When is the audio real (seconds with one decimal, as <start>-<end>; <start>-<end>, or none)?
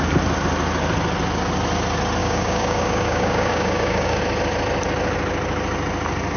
0.0-2.2; 4.2-6.4